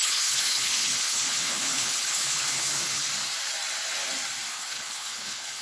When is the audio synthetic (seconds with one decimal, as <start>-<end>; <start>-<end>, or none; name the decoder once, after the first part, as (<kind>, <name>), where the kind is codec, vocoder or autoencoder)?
0.0-3.1 (codec, HILCodec); 4.5-5.6